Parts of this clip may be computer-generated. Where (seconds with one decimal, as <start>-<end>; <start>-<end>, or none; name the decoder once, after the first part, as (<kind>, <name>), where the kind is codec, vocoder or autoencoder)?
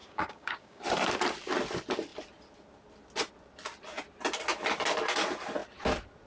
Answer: 0.0-0.8 (codec, DAC)